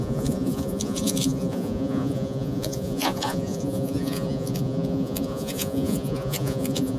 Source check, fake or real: fake